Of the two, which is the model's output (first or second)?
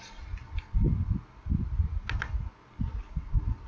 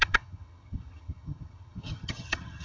second